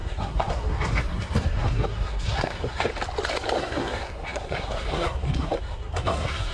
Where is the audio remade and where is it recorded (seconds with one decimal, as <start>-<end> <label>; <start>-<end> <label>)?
0.0-2.9 remade; 2.9-3.6 recorded; 3.6-6.5 remade